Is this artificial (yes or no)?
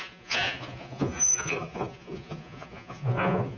yes